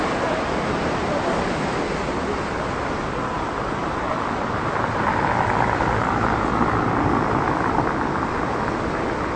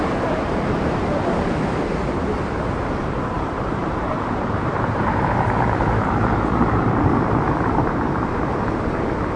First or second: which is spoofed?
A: second